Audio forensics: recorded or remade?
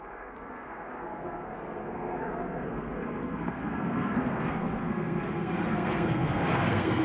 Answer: remade